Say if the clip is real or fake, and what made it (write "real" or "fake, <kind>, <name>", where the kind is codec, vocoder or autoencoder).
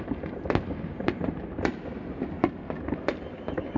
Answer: real